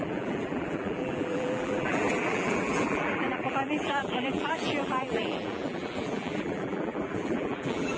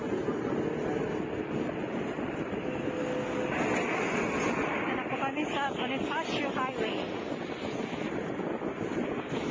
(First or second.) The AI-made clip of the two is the first